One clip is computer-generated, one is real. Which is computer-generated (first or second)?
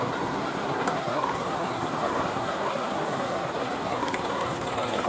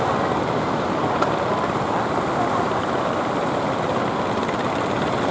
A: first